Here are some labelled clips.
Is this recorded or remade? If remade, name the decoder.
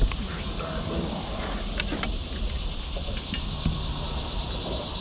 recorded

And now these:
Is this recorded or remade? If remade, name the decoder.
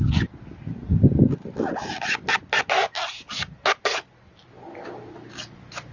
recorded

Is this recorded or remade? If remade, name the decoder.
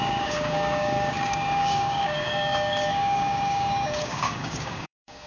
remade, codec, DAC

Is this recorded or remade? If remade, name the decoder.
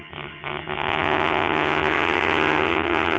remade, vocoder, HiFi-GAN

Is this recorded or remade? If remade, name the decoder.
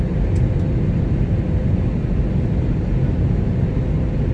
recorded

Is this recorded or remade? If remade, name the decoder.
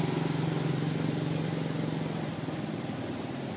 recorded